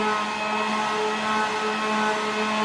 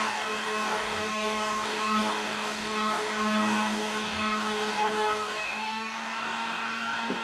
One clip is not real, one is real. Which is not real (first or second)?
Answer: second